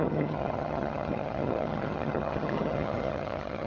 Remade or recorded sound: remade